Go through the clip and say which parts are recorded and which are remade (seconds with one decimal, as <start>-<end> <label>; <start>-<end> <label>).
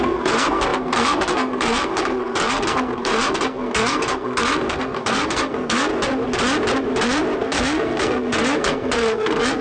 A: 0.0-5.9 remade; 5.9-7.4 recorded; 7.4-9.6 remade